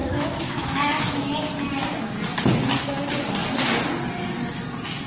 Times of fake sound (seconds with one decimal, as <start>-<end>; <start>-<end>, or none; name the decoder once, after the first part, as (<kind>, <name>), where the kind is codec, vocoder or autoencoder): 0.0-1.2 (autoencoder, DAC-VAE)